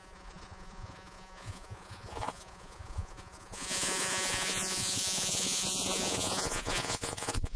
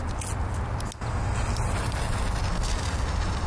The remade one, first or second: first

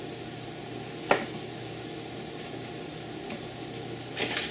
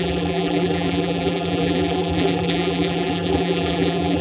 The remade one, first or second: second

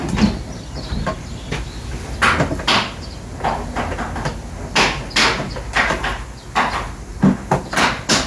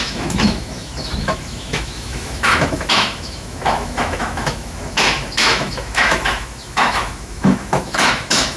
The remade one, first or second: second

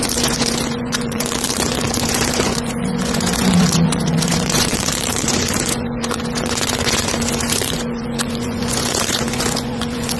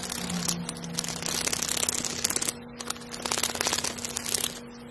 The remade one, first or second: first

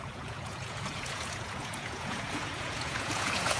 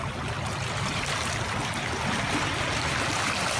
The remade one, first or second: first